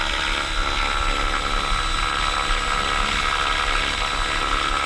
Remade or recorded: recorded